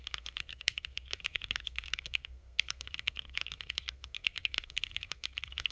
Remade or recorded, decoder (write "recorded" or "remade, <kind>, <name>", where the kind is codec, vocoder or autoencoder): remade, codec, SNAC